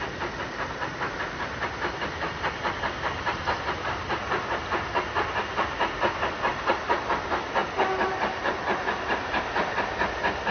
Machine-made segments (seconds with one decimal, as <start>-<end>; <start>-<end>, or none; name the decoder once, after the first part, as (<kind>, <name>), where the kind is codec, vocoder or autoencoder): none